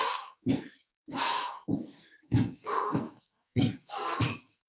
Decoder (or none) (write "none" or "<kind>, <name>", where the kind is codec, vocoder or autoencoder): codec, SNAC